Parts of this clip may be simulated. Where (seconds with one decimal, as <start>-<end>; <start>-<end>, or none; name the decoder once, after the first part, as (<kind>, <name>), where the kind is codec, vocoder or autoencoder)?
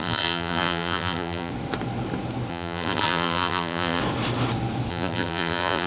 0.0-1.5 (vocoder, BigVGAN v2); 2.5-4.0; 4.9-5.9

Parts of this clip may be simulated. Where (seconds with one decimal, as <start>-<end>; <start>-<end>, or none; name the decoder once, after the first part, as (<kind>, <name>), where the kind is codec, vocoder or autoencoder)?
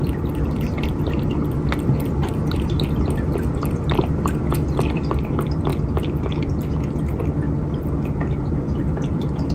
0.0-5.7 (vocoder, BigVGAN v2); 8.5-9.5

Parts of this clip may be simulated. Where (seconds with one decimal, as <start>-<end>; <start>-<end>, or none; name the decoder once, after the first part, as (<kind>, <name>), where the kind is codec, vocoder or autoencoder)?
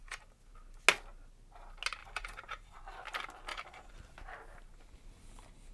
2.0-2.8 (vocoder, BigVGAN v2); 3.5-4.0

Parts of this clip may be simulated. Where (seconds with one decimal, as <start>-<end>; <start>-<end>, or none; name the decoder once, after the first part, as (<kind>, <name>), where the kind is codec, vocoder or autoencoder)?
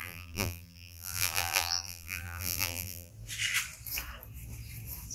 0.0-3.1 (vocoder, BigVGAN v2)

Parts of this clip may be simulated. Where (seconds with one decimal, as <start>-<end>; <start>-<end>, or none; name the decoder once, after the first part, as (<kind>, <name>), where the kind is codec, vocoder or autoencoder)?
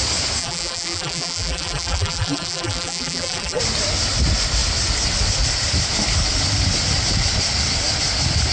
0.4-3.6 (vocoder, BigVGAN v2)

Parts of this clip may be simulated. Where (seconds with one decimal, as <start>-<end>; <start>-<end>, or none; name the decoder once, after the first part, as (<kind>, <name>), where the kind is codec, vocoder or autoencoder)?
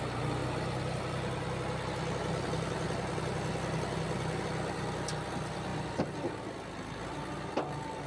none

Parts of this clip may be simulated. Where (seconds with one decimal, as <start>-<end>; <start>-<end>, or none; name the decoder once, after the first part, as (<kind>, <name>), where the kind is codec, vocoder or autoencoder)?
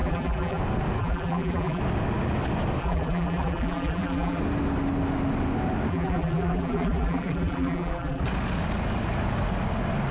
0.0-0.6 (vocoder, BigVGAN v2); 1.0-1.8; 2.8-4.4; 5.9-8.2